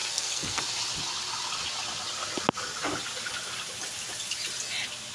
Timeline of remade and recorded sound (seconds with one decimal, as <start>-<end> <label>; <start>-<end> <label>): 0.0-0.6 remade; 0.6-5.1 recorded